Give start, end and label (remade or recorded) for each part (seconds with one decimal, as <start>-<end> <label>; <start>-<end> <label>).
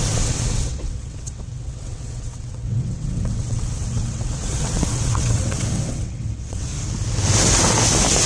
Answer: 0.0-6.7 remade; 6.7-8.3 recorded